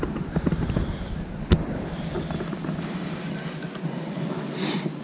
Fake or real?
real